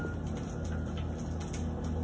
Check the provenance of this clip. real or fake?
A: real